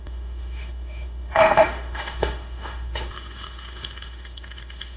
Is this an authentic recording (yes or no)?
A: no